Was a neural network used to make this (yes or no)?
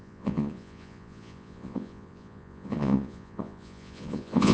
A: yes